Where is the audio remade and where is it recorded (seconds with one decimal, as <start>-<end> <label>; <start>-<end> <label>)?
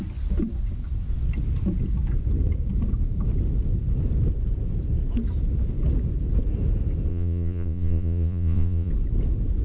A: 0.0-7.1 recorded; 7.1-8.9 remade; 8.9-9.6 recorded